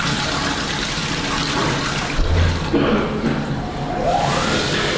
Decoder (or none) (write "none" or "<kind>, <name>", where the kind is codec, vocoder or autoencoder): none